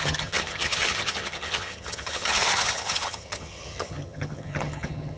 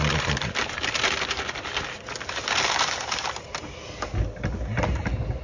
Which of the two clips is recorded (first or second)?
second